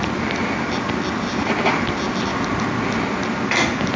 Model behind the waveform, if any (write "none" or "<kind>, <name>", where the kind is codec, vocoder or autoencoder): none